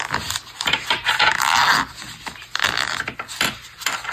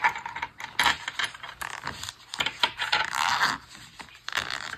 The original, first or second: first